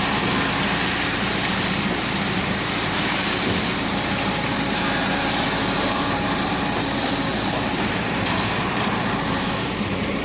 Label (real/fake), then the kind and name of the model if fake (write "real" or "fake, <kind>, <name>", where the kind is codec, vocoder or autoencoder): fake, vocoder, BigVGAN v2